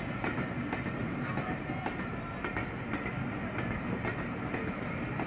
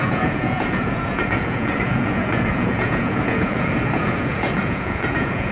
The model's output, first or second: second